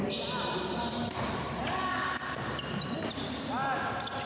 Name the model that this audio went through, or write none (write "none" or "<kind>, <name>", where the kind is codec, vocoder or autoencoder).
none